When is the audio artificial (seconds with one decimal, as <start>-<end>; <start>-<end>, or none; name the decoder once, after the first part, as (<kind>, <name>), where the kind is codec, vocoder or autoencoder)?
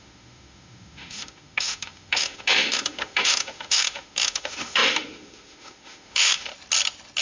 0.0-6.5 (autoencoder, DAC-VAE)